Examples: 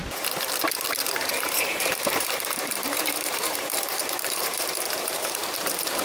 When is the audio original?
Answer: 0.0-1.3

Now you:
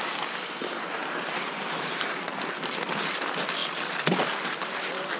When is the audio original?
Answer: 0.0-5.2

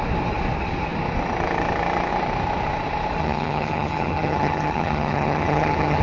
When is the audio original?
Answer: 0.0-3.2

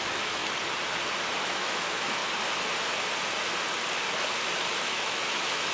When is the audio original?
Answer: 0.4-1.4; 2.2-4.8

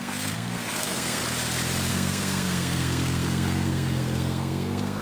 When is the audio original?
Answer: 1.2-1.9

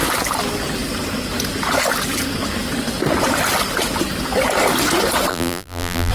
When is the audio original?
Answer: 0.0-5.3

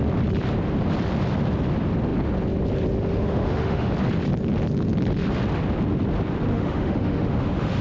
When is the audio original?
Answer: 0.0-3.1; 3.9-6.5

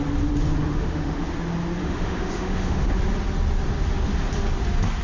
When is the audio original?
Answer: 0.0-0.7; 1.3-1.8; 2.9-5.0